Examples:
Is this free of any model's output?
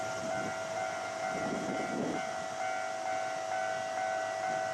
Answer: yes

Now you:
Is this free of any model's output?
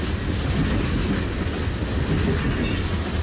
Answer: yes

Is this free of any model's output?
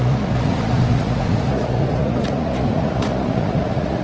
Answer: no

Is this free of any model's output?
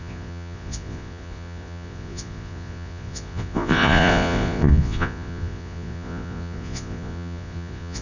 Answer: no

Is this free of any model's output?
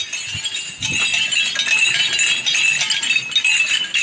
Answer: yes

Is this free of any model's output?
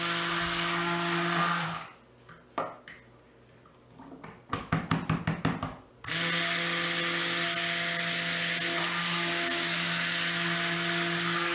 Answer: yes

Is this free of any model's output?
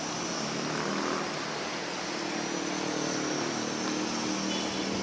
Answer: yes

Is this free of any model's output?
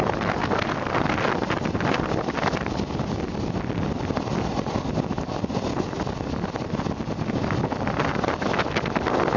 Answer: yes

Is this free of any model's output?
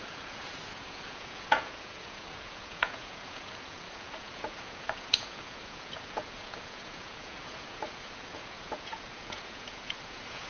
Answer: no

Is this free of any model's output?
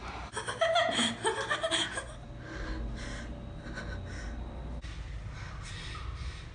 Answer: yes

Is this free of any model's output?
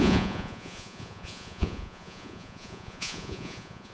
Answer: no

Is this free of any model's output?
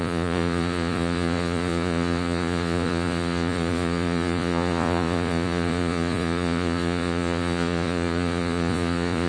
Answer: no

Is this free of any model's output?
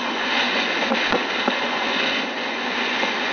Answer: no